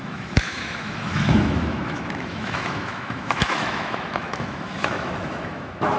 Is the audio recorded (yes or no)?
no